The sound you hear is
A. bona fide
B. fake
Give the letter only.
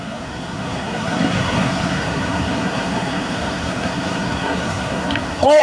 B